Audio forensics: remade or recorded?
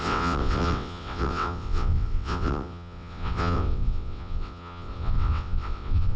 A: remade